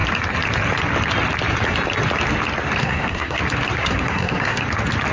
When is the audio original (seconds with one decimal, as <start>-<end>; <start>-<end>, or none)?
0.0-2.8; 3.4-3.8; 4.6-5.1